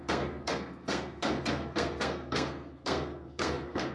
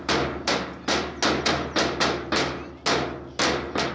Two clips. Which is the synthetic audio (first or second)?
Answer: first